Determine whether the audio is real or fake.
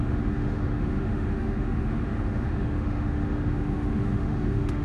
fake